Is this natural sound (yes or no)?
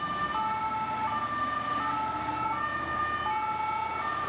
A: yes